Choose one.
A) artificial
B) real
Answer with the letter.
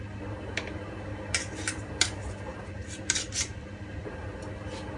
B